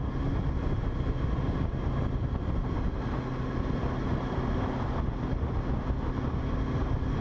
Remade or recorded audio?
recorded